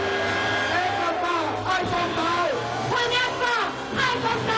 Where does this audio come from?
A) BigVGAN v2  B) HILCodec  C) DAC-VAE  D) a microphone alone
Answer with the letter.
D